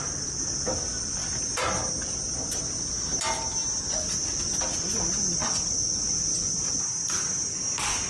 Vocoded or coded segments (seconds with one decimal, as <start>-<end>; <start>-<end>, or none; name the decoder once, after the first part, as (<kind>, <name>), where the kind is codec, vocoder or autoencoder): none